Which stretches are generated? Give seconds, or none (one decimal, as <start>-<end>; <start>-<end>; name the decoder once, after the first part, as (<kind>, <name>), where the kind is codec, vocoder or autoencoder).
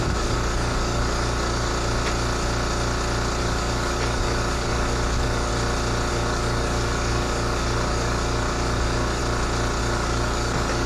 0.0-1.7 (codec, DAC); 3.4-5.5; 6.1-9.2; 9.8-10.9